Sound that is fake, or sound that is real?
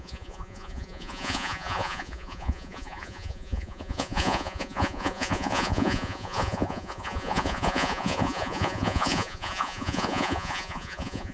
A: fake